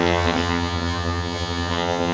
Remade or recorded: remade